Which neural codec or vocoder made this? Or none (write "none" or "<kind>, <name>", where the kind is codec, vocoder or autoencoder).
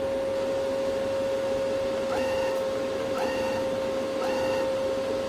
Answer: none